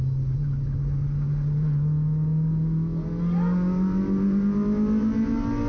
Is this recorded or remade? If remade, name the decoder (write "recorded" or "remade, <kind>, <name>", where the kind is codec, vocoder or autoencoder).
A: recorded